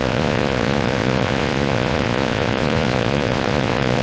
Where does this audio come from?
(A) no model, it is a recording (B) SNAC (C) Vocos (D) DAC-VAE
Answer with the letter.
C